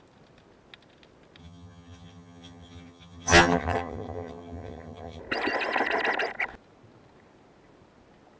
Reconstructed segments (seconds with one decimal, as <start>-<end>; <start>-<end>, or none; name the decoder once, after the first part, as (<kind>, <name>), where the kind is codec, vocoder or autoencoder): 1.4-5.2 (vocoder, HiFi-GAN)